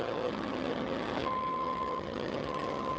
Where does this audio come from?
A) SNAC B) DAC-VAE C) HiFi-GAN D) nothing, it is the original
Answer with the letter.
C